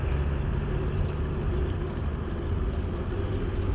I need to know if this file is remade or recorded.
recorded